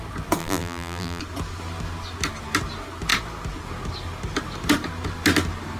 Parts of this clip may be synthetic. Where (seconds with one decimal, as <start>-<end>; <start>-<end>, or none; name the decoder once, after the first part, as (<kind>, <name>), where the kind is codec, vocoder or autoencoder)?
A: 0.4-1.2 (vocoder, BigVGAN v2)